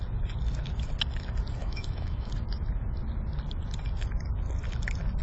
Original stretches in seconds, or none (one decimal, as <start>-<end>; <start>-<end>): 0.0-1.6; 2.3-5.2